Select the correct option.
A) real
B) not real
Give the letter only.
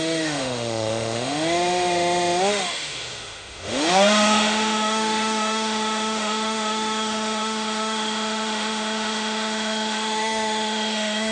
B